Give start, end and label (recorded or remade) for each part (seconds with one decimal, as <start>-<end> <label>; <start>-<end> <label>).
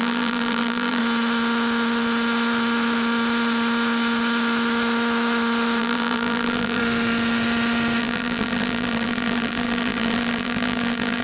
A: 0.0-1.0 remade; 1.0-5.8 recorded; 5.8-6.8 remade; 6.8-8.0 recorded; 8.0-11.2 remade